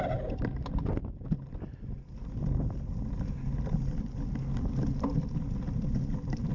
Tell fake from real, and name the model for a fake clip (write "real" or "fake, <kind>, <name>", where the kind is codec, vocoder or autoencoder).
real